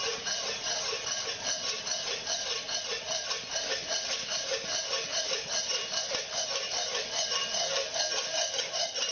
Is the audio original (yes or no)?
yes